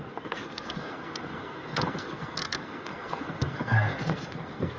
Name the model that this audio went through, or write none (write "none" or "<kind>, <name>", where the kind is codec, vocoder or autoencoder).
codec, SNAC